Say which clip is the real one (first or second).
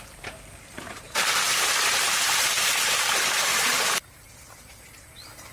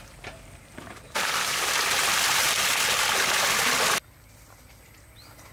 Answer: second